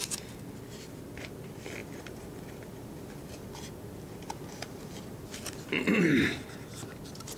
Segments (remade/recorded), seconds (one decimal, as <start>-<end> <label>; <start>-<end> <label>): 0.0-7.4 recorded